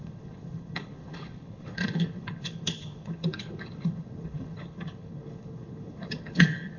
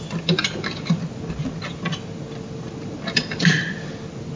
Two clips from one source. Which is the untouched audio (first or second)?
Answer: second